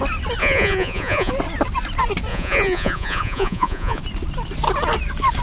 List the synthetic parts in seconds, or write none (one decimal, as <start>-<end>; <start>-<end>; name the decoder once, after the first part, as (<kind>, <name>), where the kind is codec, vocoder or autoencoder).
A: 0.4-1.3 (vocoder, Vocos); 2.3-4.0

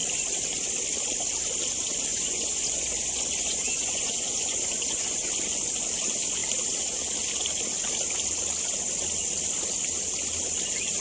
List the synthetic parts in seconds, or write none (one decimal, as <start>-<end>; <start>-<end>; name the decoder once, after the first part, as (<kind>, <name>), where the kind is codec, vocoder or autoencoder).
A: 2.1-5.3 (vocoder, Vocos)